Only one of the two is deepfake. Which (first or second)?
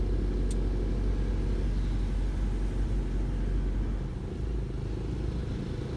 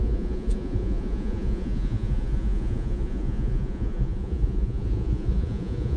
second